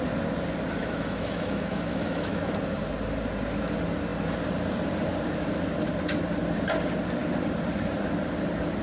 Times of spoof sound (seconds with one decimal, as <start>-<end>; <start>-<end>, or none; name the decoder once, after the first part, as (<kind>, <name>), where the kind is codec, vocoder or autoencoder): 0.8-2.5 (autoencoder, DAC-VAE)